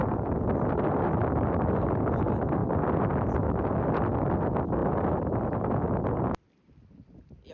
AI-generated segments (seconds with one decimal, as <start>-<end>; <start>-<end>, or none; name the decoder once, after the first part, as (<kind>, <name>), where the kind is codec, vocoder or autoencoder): none